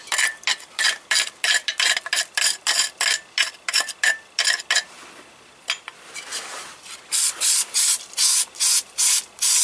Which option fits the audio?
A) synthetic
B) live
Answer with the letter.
B